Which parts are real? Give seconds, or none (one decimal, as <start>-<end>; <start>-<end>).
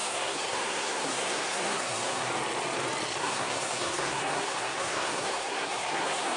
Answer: 2.3-3.2